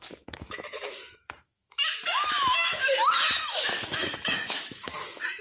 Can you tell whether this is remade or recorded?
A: remade